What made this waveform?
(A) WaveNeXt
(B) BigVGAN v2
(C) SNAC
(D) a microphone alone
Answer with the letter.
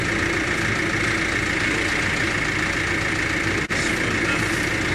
D